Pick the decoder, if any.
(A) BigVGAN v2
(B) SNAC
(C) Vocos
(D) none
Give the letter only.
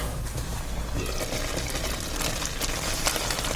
D